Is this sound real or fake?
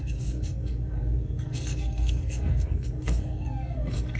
fake